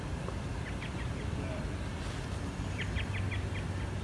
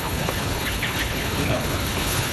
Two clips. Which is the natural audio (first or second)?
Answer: first